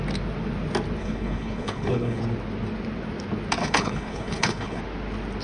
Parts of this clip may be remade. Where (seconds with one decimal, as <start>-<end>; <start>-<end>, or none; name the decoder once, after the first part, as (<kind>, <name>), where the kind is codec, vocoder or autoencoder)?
1.0-2.2 (codec, HILCodec); 3.6-4.8